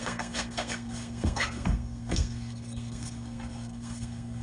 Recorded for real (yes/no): no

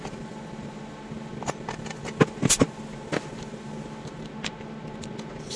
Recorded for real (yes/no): yes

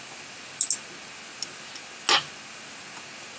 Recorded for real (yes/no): yes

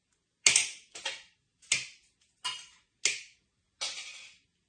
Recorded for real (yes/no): yes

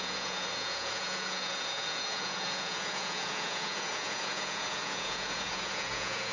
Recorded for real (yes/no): no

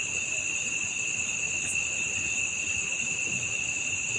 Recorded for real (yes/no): yes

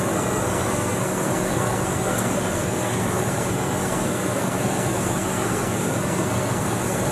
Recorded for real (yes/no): no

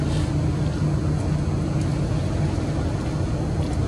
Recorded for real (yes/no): yes